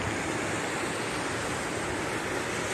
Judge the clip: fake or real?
real